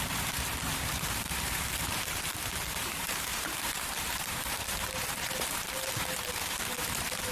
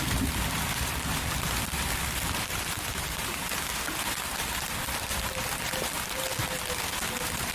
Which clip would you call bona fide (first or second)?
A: second